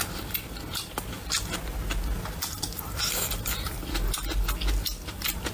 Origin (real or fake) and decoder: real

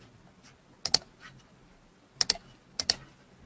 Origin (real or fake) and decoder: real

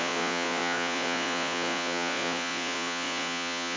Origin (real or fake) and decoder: fake, vocoder, Vocos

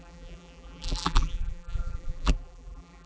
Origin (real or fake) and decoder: fake, vocoder, BigVGAN v2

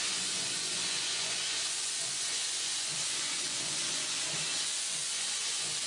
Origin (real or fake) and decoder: fake, vocoder, Vocos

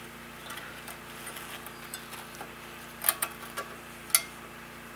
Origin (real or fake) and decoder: real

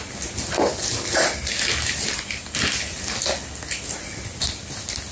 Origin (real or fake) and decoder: real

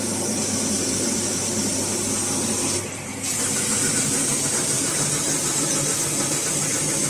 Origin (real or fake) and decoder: real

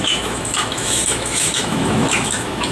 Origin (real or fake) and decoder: fake, autoencoder, DAC-VAE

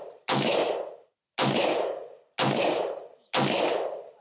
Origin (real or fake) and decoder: real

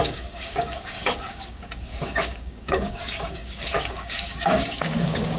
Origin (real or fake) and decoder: fake, codec, DAC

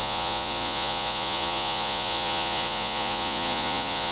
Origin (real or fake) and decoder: fake, vocoder, Vocos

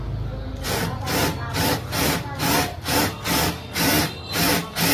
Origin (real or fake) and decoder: real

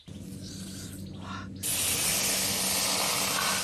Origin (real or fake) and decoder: real